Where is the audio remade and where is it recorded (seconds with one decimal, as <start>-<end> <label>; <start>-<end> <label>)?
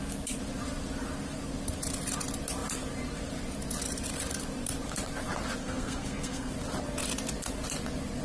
0.0-5.6 recorded; 5.6-6.5 remade; 6.5-8.2 recorded